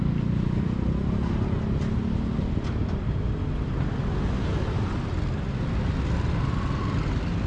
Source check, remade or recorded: recorded